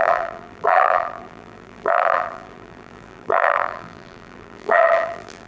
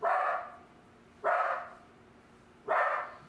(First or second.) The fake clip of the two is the first